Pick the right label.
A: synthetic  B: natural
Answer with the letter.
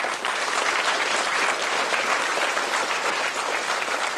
A